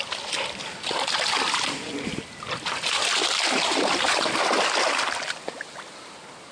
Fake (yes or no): no